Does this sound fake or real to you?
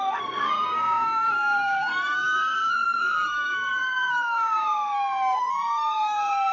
fake